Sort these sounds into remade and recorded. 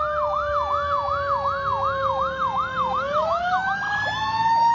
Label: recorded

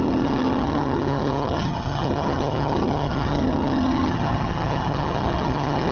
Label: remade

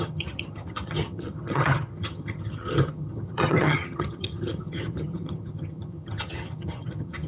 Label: remade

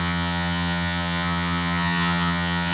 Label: remade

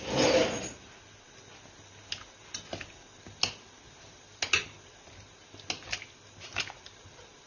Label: recorded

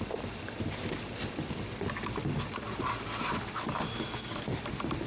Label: recorded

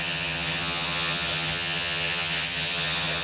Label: remade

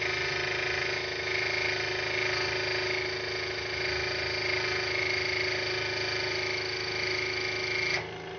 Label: recorded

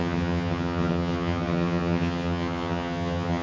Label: remade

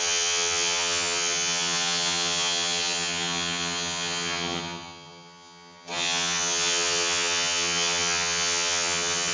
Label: remade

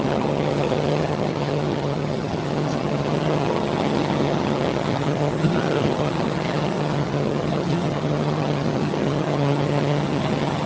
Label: remade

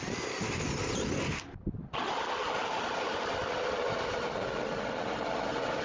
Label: recorded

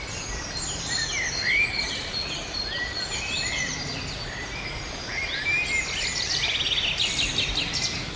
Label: recorded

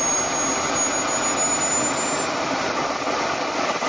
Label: recorded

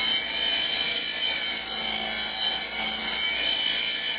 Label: recorded